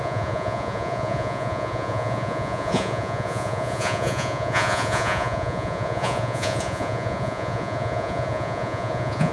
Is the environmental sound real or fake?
fake